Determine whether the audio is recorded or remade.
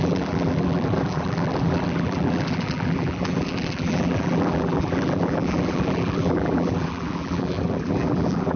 remade